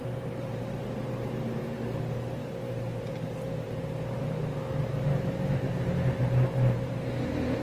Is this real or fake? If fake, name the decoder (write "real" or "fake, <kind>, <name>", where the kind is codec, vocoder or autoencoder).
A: fake, vocoder, BigVGAN v2